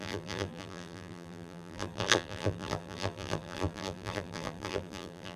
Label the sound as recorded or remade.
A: remade